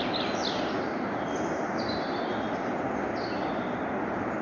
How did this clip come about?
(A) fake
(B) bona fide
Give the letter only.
B